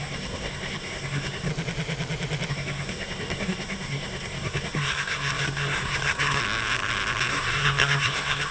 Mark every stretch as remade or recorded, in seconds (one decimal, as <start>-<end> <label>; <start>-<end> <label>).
0.0-1.5 remade; 1.5-2.5 recorded; 2.5-6.4 remade; 6.4-7.3 recorded; 7.3-8.5 remade